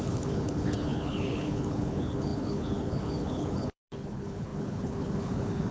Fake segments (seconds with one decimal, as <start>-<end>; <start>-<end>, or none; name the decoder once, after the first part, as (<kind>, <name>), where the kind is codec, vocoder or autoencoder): 0.0-5.7 (codec, HILCodec)